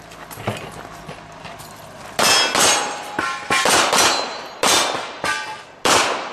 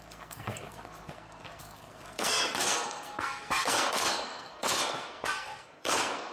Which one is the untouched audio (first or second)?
first